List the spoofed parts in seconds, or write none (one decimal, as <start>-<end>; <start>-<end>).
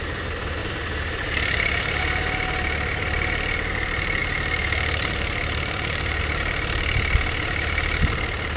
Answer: 0.6-1.2; 4.2-6.2